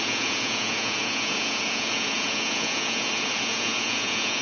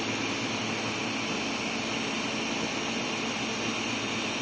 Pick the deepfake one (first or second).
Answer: first